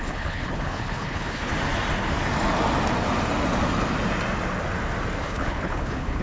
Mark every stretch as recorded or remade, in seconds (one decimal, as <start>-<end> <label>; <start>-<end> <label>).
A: 0.0-1.5 remade; 1.5-5.2 recorded; 5.2-6.2 remade

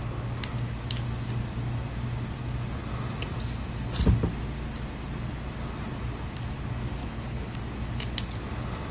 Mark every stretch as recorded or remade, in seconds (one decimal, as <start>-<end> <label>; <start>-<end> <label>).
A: 0.0-7.0 recorded; 7.0-7.6 remade; 7.6-8.9 recorded

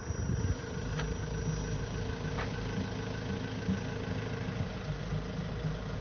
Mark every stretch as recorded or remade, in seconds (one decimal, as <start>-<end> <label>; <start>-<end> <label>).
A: 0.0-6.0 recorded

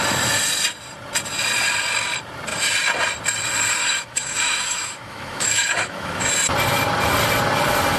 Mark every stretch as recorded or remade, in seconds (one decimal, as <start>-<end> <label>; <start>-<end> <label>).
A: 0.0-3.8 recorded; 3.8-6.3 remade; 6.3-8.0 recorded

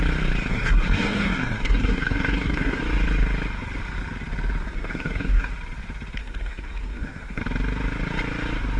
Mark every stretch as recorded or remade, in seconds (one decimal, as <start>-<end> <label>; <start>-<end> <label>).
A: 0.0-0.5 recorded; 0.5-2.8 remade; 2.8-4.6 recorded; 4.6-5.5 remade; 5.5-6.2 recorded; 6.2-7.4 remade; 7.4-8.8 recorded

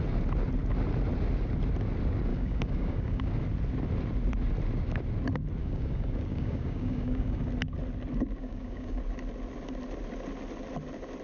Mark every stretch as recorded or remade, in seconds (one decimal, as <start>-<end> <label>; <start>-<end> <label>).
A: 0.0-2.3 recorded; 2.3-3.3 remade; 3.3-5.6 recorded; 5.6-7.5 remade; 7.5-8.4 recorded; 8.4-9.0 remade; 9.0-11.2 recorded

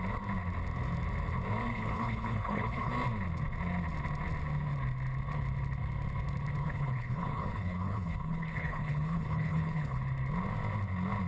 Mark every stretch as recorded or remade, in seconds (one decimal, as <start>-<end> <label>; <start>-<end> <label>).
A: 0.0-1.7 recorded; 1.7-2.9 remade; 2.9-6.6 recorded; 6.6-10.0 remade; 10.0-11.3 recorded

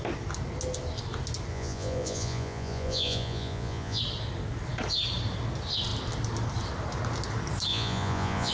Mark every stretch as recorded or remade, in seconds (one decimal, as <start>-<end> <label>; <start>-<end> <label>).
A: 0.0-1.5 recorded; 1.5-4.0 remade; 4.0-7.7 recorded; 7.7-8.5 remade